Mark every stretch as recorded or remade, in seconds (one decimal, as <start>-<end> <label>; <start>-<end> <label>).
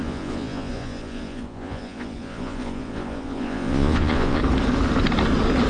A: 0.0-4.4 remade; 4.4-5.7 recorded